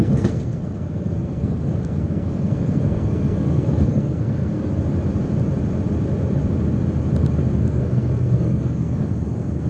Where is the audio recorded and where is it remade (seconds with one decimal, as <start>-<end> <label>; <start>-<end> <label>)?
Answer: 0.0-4.7 remade; 4.7-7.6 recorded; 7.6-9.7 remade